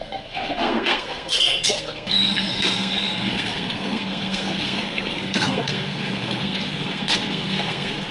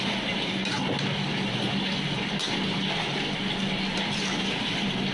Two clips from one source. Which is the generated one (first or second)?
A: first